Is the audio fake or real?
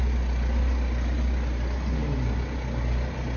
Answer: real